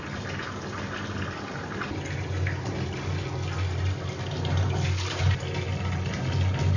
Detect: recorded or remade recorded